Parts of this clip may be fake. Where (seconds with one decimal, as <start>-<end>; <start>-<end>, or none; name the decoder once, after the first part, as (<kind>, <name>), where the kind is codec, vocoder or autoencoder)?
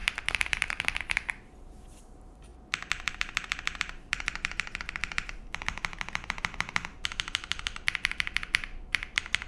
0.0-2.5 (vocoder, BigVGAN v2); 3.1-9.5